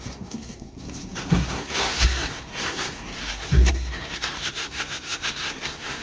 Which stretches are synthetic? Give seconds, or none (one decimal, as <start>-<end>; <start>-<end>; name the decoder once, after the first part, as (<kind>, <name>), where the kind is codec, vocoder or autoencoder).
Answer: 0.0-6.0 (codec, SNAC)